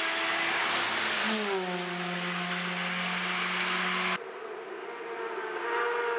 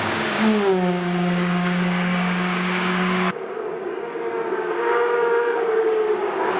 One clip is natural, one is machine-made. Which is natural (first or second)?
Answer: first